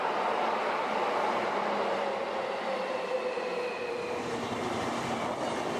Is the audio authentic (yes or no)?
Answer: yes